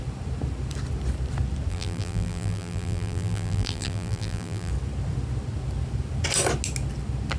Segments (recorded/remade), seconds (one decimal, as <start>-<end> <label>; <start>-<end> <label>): 0.0-1.7 recorded; 1.7-4.7 remade; 4.7-7.4 recorded